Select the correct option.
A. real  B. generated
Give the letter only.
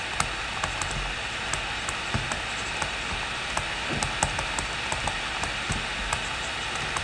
A